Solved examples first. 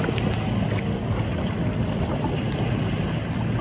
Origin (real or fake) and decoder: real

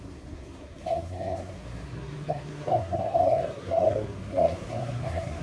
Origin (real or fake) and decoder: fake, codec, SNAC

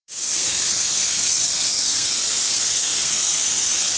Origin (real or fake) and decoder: fake, codec, SNAC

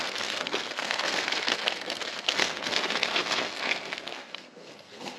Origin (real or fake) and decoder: fake, codec, SNAC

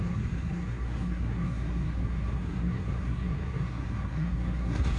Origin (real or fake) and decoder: fake, codec, SNAC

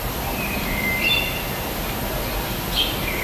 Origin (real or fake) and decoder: real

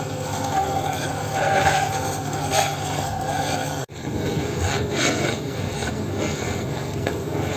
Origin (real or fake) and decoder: fake, codec, SNAC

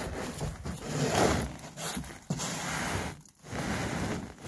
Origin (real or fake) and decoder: real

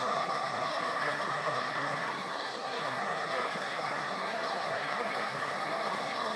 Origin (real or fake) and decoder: fake, codec, SNAC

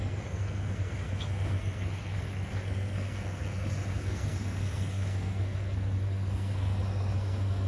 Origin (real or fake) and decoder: fake, codec, SNAC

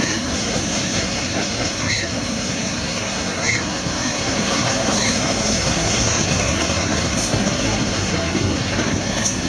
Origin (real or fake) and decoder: fake, codec, SNAC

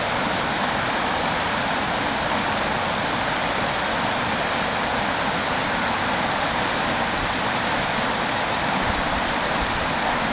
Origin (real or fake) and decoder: real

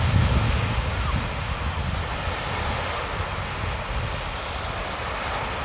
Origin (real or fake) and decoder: real